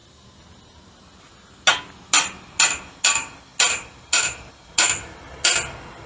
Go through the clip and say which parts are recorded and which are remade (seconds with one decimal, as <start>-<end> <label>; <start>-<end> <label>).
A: 0.0-6.1 recorded